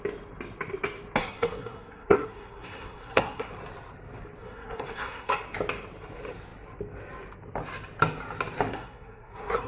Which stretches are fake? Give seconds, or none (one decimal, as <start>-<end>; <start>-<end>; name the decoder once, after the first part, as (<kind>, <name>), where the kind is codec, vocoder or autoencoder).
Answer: 1.2-3.5 (codec, SNAC); 4.4-5.3; 8.7-9.7